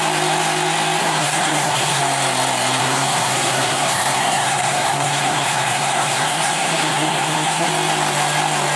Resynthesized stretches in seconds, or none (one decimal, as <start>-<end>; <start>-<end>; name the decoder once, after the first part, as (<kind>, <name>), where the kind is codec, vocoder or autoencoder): 1.0-2.0 (codec, SNAC); 2.8-7.7